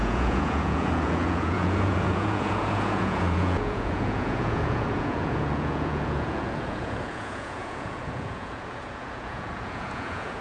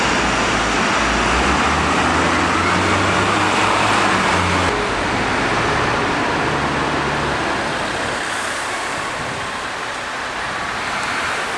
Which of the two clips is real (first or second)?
second